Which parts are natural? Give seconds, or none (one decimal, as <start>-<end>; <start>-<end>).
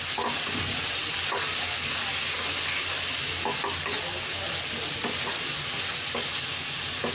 0.0-7.1